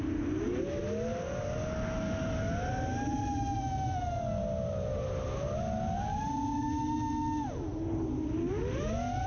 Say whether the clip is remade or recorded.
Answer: recorded